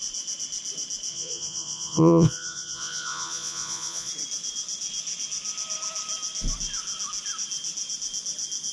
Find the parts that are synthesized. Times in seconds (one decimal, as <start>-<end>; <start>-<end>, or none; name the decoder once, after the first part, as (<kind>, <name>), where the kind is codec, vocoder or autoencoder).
1.1-4.1 (vocoder, Vocos)